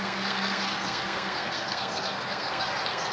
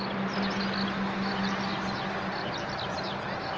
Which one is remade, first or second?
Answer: first